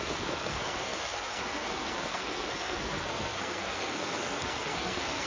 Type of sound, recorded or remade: remade